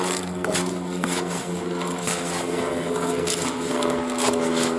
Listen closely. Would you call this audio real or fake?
fake